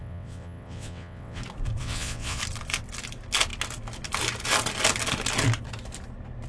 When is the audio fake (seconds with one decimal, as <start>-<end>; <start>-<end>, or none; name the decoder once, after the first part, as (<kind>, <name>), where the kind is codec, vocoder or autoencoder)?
0.0-1.4 (vocoder, WaveNeXt); 1.8-2.4